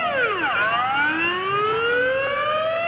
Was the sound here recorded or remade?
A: recorded